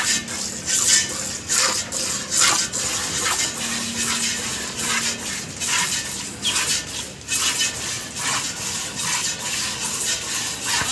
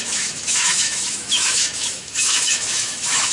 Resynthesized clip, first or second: second